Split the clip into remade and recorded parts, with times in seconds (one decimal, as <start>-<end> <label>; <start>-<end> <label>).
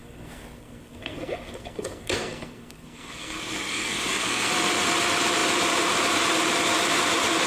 0.0-4.5 remade; 4.5-7.5 recorded